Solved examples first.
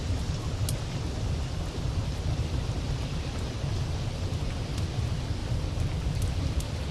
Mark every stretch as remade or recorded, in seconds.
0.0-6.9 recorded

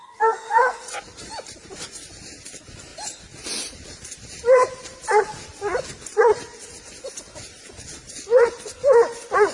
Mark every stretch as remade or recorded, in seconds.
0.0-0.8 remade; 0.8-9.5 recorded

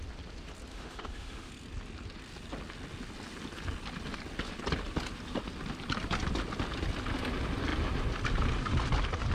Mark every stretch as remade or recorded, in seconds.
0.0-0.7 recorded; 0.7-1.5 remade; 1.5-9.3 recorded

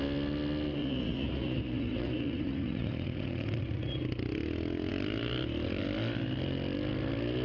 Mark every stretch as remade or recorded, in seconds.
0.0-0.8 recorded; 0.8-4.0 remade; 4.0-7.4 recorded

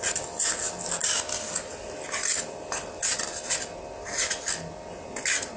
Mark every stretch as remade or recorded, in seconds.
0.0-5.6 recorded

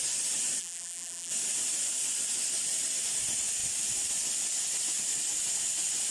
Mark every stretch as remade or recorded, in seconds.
0.0-0.6 recorded; 0.6-1.3 remade; 1.3-6.1 recorded

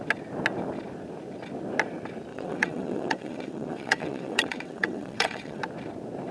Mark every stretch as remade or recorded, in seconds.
0.0-2.3 recorded; 2.3-5.6 remade; 5.6-6.3 recorded